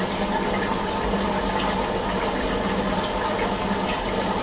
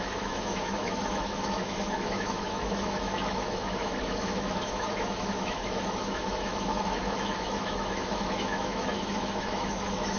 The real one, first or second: first